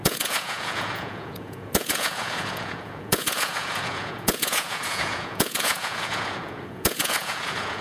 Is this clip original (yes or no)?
no